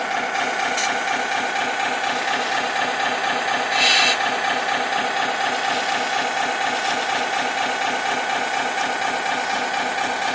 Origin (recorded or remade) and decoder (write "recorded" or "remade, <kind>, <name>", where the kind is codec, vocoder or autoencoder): recorded